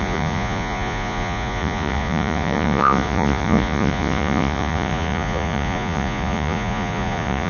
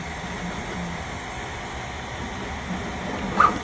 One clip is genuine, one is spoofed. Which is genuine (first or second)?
second